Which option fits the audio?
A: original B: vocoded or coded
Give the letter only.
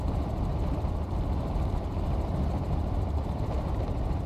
B